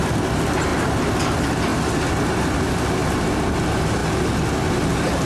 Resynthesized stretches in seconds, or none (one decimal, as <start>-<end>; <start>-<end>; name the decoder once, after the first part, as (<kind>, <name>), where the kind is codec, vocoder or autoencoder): none